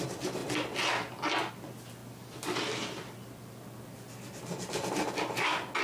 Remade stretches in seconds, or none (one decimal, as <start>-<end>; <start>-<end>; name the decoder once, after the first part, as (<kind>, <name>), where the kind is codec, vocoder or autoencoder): none